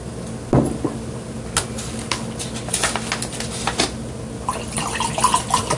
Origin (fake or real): real